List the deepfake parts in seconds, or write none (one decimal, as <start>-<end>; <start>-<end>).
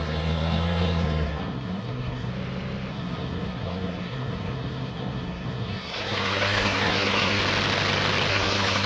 0.0-2.3; 2.9-7.4; 8.3-8.9